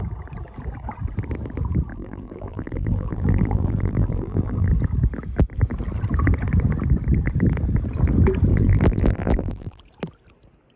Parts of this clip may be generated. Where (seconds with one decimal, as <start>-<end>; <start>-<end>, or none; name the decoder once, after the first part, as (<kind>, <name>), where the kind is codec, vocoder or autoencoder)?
1.9-4.7 (vocoder, BigVGAN v2); 8.5-9.8